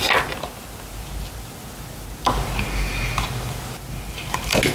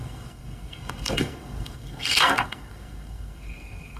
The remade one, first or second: second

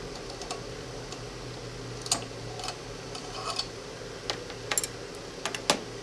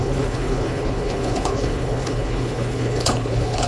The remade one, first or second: second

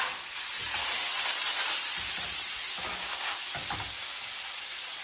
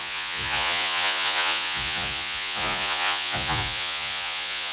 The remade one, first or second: second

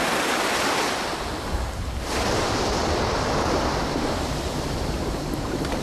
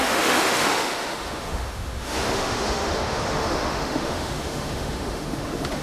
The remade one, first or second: second